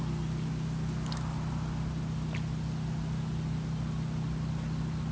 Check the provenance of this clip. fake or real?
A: real